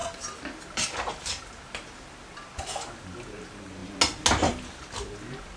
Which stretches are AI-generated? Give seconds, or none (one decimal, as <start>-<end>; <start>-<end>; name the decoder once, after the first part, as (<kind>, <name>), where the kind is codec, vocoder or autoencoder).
none

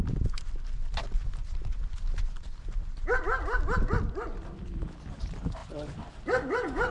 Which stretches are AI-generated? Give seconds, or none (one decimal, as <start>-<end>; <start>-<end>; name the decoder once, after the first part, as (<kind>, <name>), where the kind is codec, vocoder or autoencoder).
none

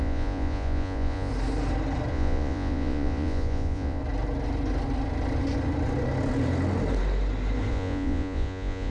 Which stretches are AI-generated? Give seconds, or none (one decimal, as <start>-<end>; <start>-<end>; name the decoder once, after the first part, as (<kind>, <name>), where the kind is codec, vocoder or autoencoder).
0.0-1.3 (vocoder, Vocos); 2.1-4.0; 7.7-8.9

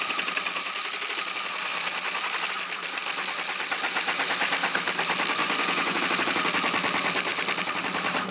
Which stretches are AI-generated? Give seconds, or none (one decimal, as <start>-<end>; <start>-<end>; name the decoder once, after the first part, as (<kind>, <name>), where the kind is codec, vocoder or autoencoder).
5.4-6.0 (vocoder, Vocos)

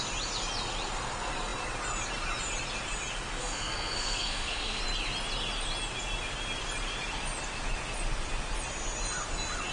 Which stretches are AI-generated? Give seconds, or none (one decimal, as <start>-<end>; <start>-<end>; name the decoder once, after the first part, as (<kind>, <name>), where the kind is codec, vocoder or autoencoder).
3.4-4.8 (codec, SNAC)

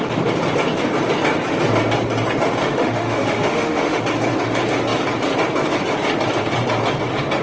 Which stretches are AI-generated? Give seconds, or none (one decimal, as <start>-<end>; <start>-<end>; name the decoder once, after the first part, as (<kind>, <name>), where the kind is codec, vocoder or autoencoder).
2.6-4.0 (autoencoder, DAC-VAE)

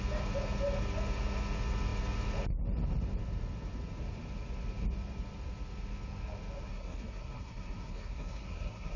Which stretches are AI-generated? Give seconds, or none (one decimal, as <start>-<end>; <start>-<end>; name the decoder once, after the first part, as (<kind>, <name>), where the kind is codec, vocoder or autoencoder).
6.7-9.0 (codec, SNAC)

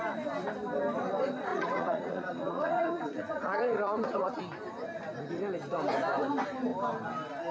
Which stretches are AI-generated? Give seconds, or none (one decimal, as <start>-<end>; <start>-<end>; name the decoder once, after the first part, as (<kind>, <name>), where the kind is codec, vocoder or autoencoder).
1.5-4.4 (vocoder, Vocos)